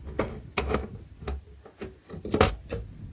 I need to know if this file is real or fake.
real